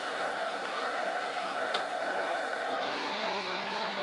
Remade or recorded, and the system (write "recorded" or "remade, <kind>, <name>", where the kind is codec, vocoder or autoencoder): remade, codec, SNAC